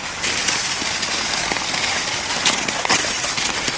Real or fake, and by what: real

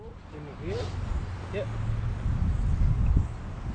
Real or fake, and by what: real